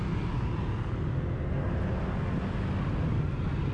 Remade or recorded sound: recorded